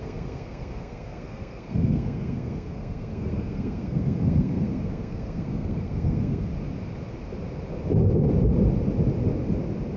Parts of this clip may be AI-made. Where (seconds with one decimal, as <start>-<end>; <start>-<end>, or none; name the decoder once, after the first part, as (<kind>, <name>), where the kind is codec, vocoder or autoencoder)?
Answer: 0.0-6.5 (codec, SNAC)